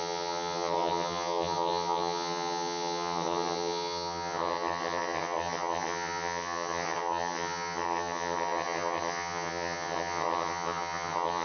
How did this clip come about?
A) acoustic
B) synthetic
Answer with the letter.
B